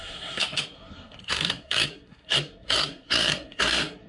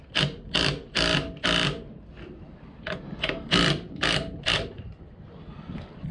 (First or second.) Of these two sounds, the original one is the second